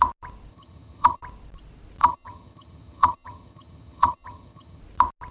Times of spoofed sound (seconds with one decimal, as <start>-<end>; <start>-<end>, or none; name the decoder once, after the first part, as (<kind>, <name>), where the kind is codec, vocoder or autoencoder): 0.5-1.2 (vocoder, HiFi-GAN); 2.0-4.8